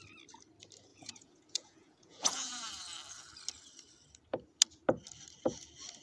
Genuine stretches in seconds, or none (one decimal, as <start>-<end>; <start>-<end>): 0.0-0.9; 2.7-6.0